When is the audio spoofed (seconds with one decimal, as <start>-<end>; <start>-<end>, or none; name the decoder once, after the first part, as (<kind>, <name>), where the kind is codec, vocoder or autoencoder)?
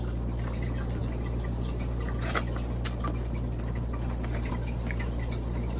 none